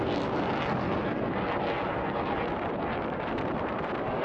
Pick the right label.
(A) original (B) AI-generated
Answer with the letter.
A